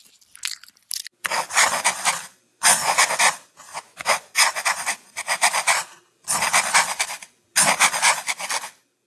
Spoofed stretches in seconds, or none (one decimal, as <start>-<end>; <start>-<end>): 2.5-3.1; 3.7-5.2